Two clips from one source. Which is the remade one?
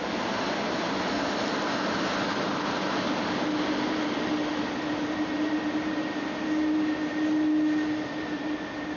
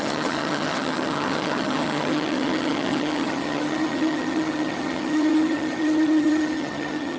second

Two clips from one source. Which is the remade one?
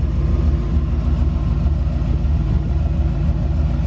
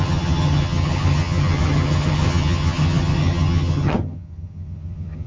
second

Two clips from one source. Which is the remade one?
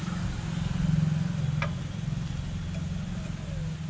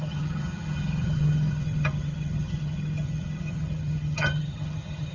second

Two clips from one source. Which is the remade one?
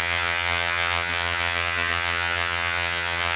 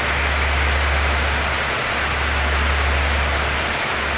first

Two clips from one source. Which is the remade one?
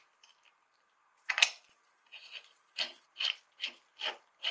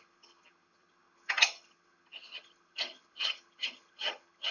second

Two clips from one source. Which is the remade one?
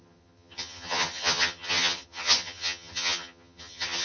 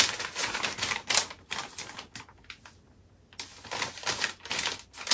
first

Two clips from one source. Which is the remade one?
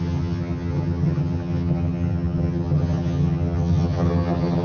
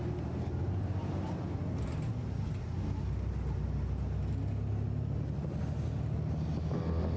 first